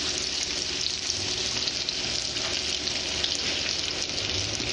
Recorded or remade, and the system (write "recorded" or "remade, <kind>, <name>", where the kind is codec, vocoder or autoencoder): recorded